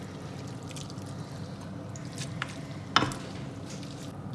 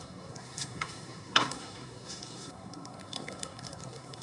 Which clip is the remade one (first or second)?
second